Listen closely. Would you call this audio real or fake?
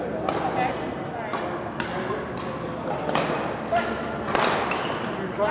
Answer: real